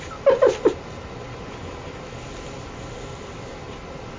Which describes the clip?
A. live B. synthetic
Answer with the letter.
A